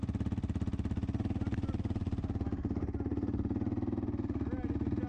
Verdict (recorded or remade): recorded